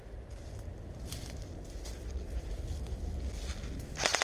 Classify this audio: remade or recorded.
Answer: recorded